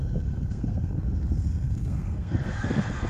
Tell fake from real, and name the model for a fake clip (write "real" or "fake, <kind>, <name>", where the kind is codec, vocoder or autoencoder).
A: fake, codec, SNAC